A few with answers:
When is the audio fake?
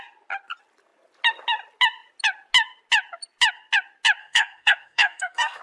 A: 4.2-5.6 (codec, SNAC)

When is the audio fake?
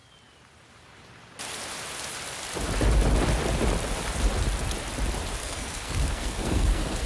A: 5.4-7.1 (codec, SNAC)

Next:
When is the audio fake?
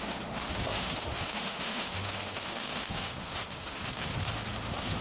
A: 0.0-5.0 (autoencoder, DAC-VAE)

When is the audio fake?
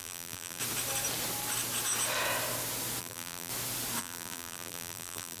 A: 0.0-0.6 (vocoder, BigVGAN v2); 3.0-3.5; 4.0-5.4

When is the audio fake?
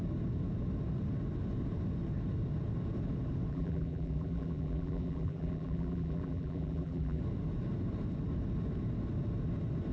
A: 3.5-7.2 (vocoder, BigVGAN v2)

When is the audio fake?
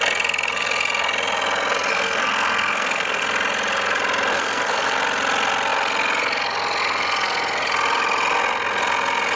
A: 1.9-3.2 (codec, SNAC); 4.3-5.0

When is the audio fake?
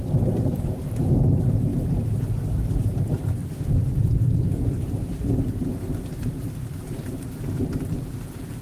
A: none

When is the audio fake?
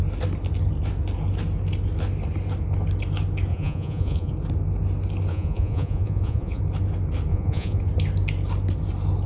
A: 3.5-4.3 (vocoder, Vocos); 5.3-6.6; 7.3-7.8